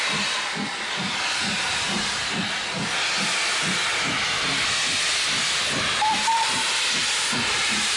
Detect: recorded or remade remade